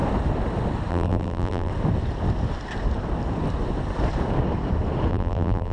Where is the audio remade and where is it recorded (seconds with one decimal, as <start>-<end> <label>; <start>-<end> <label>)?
0.0-0.9 recorded; 0.9-1.7 remade; 1.7-5.1 recorded; 5.1-5.7 remade